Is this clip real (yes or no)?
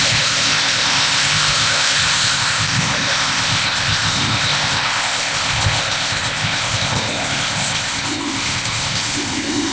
no